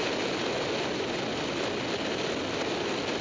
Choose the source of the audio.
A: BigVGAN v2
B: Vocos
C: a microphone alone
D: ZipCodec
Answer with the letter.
C